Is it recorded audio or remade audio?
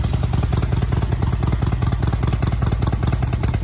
recorded